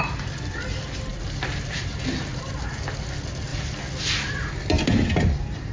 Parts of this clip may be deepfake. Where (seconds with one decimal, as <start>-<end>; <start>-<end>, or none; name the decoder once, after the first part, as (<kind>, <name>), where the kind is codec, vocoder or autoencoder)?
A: none